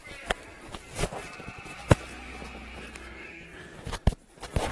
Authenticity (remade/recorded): recorded